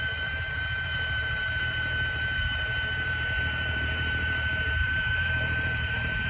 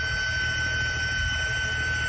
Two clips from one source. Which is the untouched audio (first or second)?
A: second